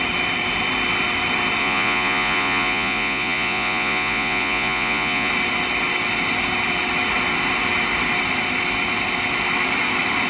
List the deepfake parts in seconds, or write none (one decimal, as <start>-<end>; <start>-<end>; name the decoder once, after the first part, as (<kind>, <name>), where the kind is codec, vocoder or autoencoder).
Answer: 1.6-5.3 (vocoder, Vocos)